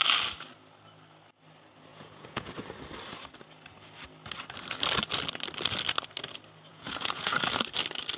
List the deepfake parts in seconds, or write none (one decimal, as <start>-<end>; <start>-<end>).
1.9-2.5; 6.7-7.3